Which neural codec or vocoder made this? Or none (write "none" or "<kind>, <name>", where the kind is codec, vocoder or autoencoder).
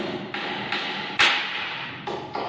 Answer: none